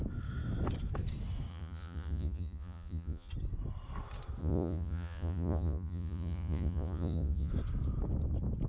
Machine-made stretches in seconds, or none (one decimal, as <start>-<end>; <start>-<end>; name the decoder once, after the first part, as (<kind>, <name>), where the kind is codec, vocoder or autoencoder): 1.5-3.3 (vocoder, Vocos); 4.4-7.5